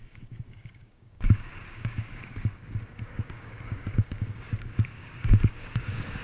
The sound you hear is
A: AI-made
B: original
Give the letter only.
A